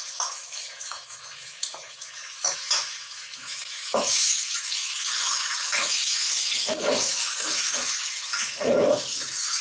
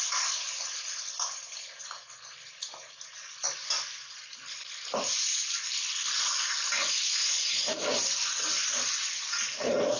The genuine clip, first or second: second